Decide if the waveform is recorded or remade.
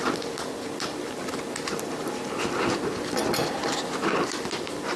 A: recorded